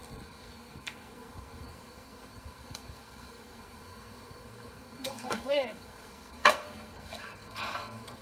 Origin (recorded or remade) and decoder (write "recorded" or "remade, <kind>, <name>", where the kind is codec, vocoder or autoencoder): remade, codec, SNAC